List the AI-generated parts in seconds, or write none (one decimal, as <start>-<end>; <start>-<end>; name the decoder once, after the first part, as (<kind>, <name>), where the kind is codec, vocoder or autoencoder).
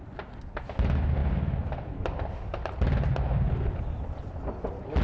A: none